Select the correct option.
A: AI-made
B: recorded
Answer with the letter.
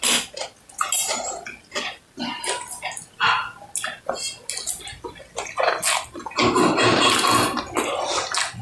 B